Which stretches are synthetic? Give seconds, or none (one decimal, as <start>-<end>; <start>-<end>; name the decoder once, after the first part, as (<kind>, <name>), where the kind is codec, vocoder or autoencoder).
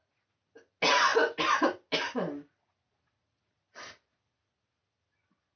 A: none